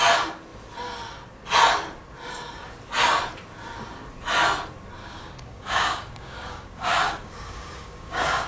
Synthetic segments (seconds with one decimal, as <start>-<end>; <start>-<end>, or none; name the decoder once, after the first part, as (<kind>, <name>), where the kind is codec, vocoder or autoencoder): 5.0-8.5 (codec, DAC)